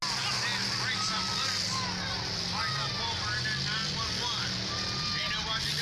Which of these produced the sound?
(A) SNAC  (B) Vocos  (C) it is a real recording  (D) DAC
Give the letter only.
C